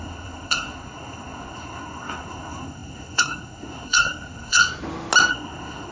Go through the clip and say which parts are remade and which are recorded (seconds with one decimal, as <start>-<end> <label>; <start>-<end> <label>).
0.0-4.6 remade; 4.6-5.3 recorded; 5.3-5.9 remade